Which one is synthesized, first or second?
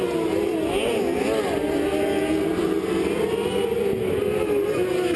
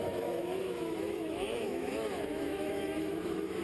second